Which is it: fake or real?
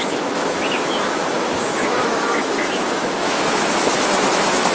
fake